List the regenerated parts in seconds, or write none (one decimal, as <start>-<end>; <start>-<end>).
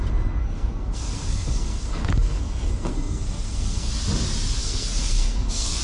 0.4-3.9; 4.6-5.8